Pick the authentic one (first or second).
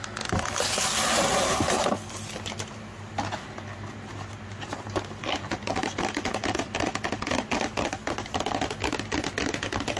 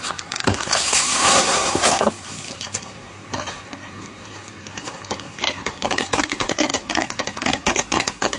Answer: first